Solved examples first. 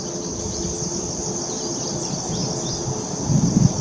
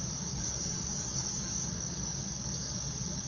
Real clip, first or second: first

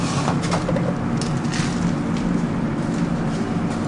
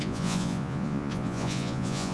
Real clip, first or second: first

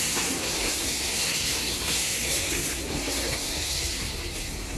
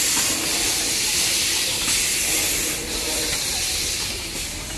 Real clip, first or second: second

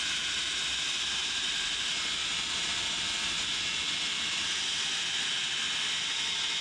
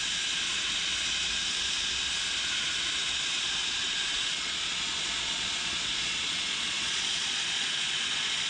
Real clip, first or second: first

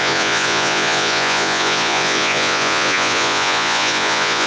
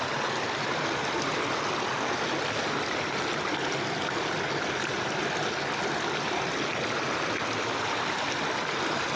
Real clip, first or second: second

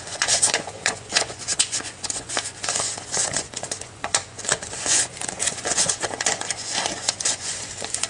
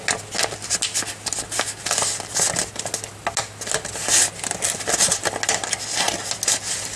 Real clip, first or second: second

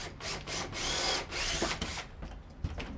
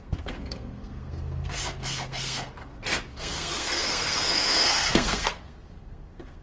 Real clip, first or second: first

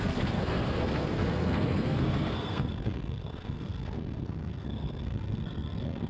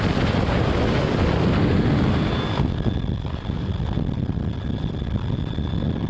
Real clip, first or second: second